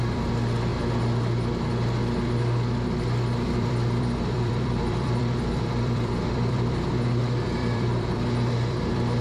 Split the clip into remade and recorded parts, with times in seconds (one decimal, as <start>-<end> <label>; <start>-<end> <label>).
0.0-0.7 remade; 0.7-3.5 recorded; 3.5-9.2 remade